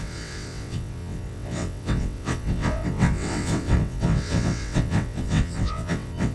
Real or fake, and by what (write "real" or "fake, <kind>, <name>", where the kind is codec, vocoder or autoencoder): fake, vocoder, WaveNeXt